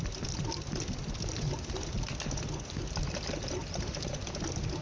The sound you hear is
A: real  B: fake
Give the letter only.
A